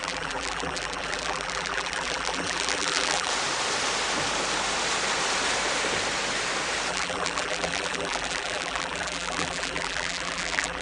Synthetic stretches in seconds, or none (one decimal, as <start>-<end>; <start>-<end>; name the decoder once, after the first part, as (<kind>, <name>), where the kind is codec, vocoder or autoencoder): 0.0-3.3 (vocoder, BigVGAN v2); 6.9-10.8